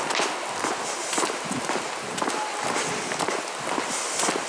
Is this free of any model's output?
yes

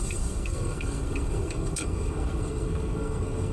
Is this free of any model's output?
no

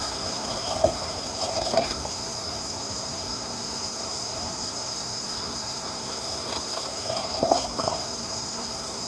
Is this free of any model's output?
no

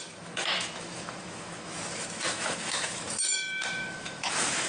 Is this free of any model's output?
no